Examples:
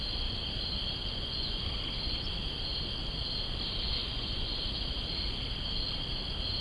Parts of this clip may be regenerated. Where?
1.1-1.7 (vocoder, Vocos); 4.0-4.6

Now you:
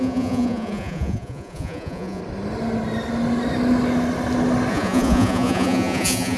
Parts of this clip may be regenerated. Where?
0.0-2.2 (vocoder, Vocos); 4.7-6.4

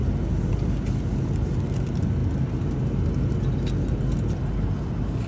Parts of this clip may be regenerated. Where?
none

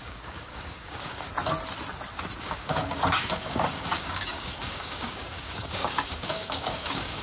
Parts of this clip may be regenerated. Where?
0.0-1.3 (codec, DAC); 2.4-7.2

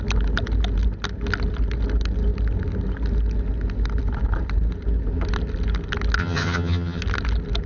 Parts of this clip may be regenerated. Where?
6.2-7.0 (vocoder, HiFi-GAN)

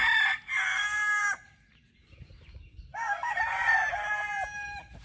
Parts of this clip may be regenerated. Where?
0.6-1.2 (codec, SNAC); 2.9-3.4

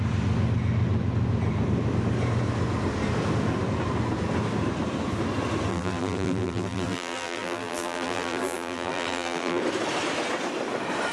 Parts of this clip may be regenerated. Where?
5.7-9.6 (vocoder, BigVGAN v2)